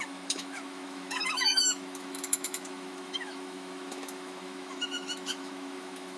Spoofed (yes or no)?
yes